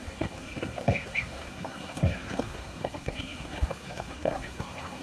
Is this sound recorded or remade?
remade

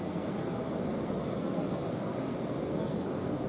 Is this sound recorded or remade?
remade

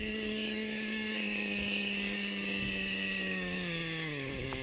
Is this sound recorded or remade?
remade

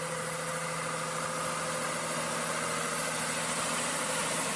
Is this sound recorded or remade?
recorded